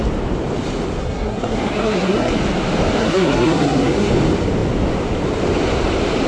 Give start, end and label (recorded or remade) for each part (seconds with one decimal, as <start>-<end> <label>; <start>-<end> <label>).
0.0-1.0 recorded; 1.0-2.3 remade; 2.3-3.0 recorded; 3.0-4.1 remade; 4.1-6.3 recorded